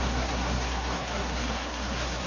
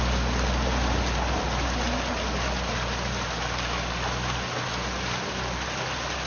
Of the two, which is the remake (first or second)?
first